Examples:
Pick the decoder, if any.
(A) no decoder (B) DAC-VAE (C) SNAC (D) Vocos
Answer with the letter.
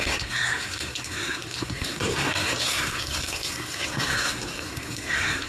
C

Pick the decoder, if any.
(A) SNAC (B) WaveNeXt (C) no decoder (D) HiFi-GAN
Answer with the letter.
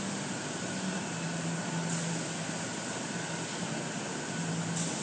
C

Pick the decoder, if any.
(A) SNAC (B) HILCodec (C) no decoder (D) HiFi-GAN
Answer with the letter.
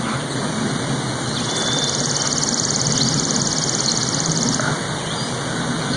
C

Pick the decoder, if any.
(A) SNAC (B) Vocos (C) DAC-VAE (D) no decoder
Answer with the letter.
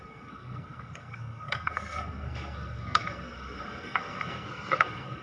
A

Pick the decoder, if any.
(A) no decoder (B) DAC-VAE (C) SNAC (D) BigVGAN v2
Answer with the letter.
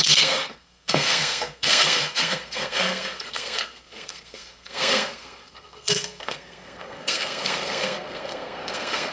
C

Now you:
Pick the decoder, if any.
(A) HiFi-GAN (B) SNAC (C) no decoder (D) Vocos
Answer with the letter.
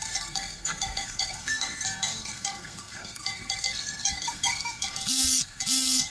B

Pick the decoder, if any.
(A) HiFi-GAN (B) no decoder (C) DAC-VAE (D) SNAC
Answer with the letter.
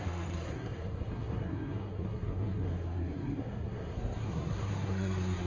D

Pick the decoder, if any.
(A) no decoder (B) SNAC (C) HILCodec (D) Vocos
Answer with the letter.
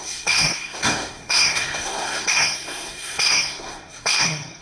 B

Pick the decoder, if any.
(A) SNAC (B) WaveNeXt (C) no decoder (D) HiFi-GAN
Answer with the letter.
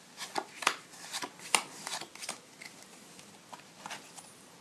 C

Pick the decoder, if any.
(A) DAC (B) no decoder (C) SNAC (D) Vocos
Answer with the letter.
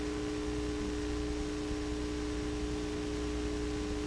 B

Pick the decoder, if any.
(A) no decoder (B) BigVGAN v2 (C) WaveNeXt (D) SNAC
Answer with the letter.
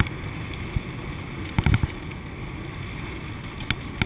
A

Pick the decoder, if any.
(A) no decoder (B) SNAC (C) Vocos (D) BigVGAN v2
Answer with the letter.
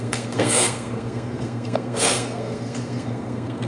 B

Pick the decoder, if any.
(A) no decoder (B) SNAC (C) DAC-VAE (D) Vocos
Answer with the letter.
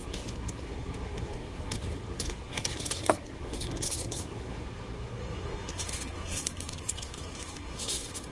B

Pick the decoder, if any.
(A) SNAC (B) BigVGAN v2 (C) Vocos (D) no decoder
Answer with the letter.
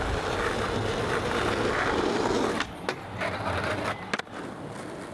D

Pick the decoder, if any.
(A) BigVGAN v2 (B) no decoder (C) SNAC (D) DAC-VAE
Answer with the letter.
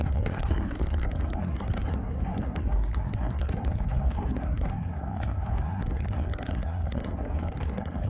C